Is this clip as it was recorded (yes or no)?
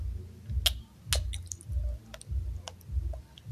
yes